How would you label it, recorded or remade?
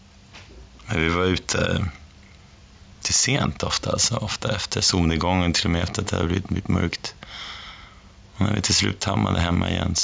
recorded